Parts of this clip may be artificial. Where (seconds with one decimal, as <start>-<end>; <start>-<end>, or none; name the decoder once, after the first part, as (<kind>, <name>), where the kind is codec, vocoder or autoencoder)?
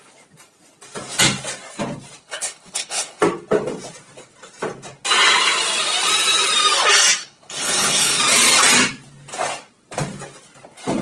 2.2-3.2 (codec, HILCodec); 7.2-8.2